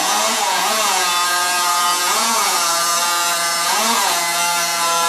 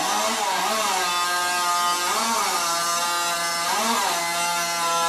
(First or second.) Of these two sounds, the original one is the second